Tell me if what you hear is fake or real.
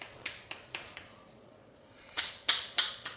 fake